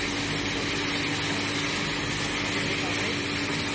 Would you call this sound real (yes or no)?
yes